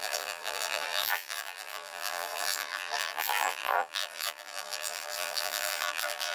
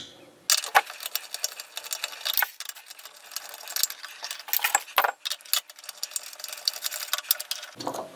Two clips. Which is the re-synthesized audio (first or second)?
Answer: first